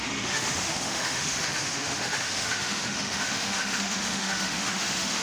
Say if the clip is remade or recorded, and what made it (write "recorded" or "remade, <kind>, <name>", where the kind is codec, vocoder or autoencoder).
remade, autoencoder, DAC-VAE